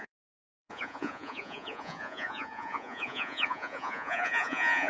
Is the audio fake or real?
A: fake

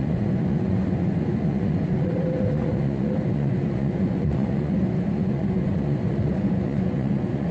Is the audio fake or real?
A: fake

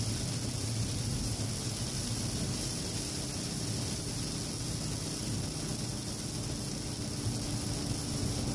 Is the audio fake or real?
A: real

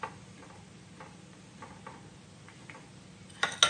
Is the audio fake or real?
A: real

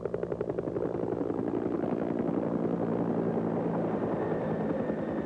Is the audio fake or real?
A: real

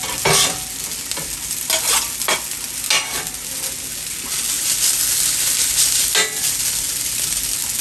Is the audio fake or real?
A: real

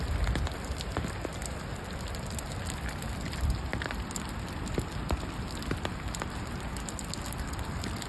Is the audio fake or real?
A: real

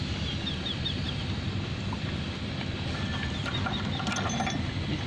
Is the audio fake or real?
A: real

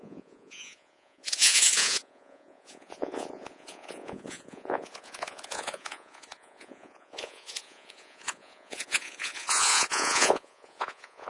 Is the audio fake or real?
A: fake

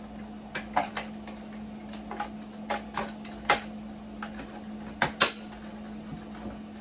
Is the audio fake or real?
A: real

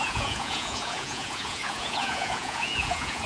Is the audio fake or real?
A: fake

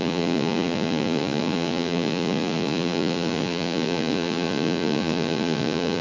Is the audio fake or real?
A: fake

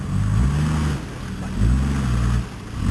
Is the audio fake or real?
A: real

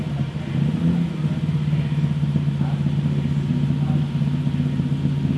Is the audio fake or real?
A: real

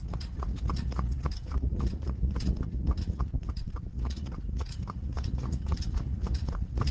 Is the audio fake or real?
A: fake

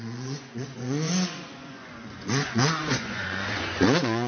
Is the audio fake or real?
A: fake